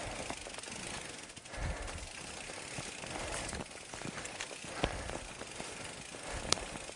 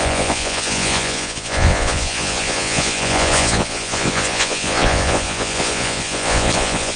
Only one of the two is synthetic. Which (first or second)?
second